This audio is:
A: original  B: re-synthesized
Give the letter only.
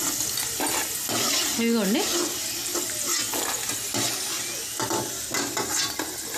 A